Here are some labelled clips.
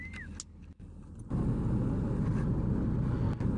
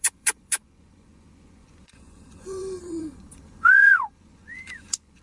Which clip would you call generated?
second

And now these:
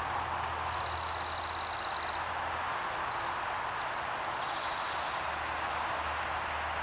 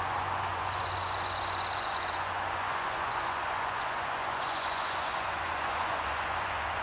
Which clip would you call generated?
second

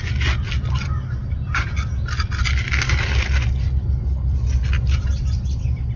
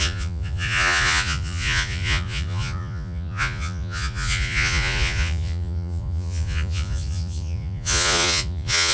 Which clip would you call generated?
second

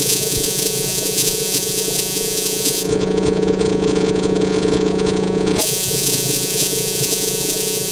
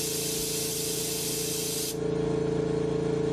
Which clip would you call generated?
first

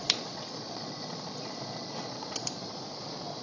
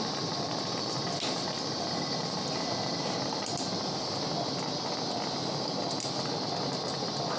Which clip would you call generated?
first